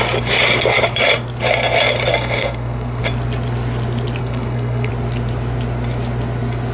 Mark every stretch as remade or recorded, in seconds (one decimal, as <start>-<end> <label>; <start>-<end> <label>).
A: 0.0-2.1 recorded; 2.1-3.0 remade; 3.0-4.2 recorded; 4.2-4.9 remade; 4.9-6.7 recorded